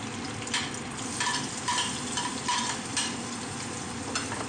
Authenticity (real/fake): real